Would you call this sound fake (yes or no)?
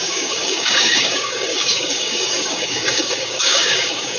yes